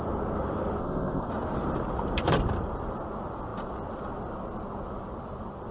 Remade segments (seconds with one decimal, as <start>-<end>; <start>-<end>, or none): 0.8-1.3